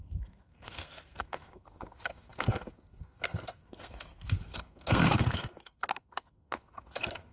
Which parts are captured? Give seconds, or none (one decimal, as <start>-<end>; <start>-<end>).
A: none